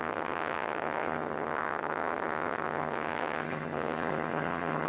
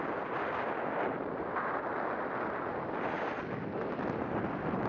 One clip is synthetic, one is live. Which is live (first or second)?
second